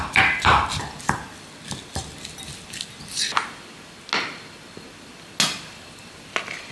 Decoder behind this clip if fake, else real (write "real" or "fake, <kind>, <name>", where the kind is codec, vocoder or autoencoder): real